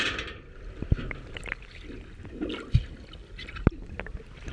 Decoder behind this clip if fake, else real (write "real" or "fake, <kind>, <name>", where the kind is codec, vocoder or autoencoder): real